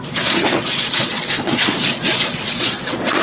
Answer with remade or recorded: remade